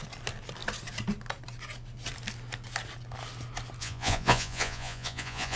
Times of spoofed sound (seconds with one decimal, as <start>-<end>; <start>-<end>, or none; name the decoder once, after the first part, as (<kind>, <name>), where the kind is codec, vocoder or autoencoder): 3.8-5.6 (vocoder, Vocos)